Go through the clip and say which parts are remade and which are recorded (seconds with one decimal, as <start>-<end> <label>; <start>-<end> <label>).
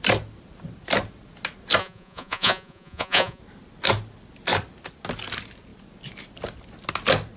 0.0-1.8 recorded; 1.8-3.4 remade; 3.4-7.4 recorded